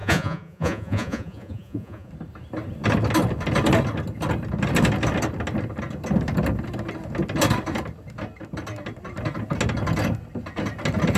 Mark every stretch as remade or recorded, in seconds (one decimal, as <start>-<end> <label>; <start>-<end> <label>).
0.0-2.1 remade; 2.1-11.2 recorded